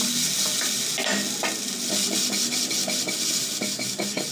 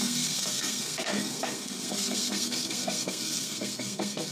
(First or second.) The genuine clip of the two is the first